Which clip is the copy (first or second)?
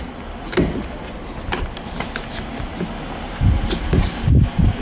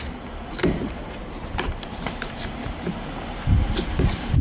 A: second